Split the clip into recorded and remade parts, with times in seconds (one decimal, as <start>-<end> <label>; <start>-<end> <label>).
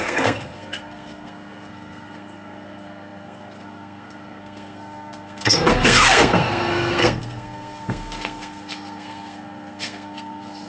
0.0-10.7 remade